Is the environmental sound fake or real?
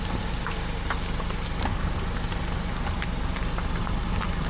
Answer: real